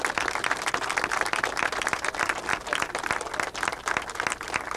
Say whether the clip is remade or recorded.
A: recorded